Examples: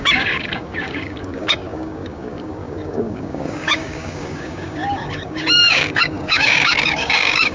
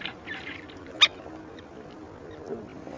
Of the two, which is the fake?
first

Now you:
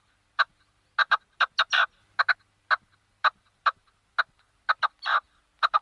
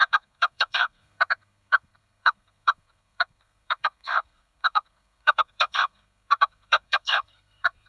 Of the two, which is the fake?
second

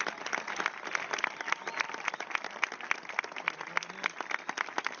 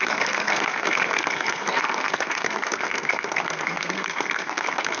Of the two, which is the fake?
second